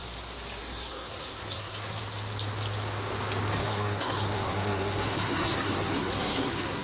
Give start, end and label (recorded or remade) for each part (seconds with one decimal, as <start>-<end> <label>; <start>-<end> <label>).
0.0-0.6 recorded; 0.6-2.0 remade; 2.0-3.6 recorded; 3.6-6.8 remade